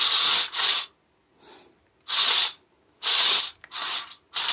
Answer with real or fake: real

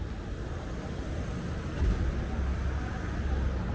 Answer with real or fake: real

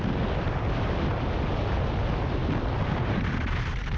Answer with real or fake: real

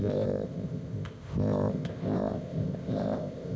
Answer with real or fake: fake